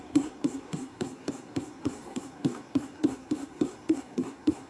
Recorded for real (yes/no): no